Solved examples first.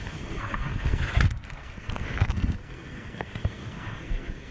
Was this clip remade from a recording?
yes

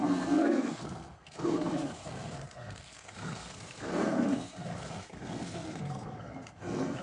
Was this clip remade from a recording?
yes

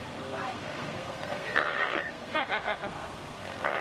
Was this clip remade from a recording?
yes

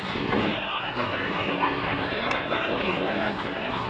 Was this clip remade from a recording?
yes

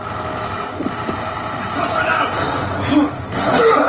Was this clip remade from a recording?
no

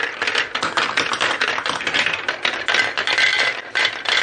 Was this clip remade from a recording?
no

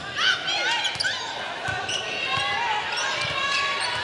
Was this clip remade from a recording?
no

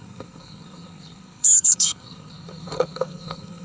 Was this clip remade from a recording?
yes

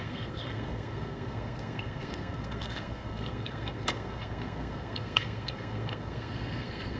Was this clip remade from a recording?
yes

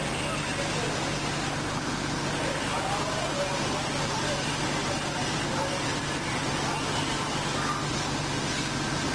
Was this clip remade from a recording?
no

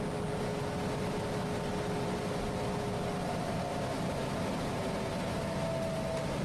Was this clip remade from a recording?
no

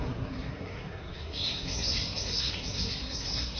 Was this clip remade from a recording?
yes